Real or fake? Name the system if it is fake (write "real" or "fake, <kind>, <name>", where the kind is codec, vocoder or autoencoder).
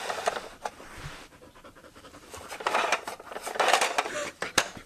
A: fake, vocoder, BigVGAN v2